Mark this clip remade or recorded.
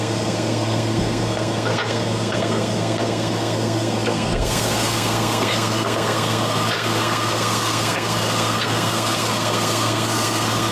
remade